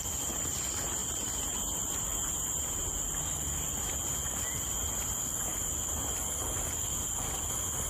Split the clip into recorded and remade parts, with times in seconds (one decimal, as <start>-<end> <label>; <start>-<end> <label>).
0.0-7.9 recorded